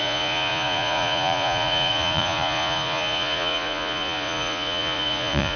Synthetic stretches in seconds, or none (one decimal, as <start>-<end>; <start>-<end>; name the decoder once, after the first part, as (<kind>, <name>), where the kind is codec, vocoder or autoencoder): 0.0-5.6 (vocoder, Vocos)